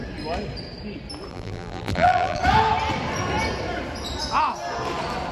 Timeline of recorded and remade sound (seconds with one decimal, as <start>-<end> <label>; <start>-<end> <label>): 0.0-1.3 recorded; 1.3-2.4 remade; 2.4-5.3 recorded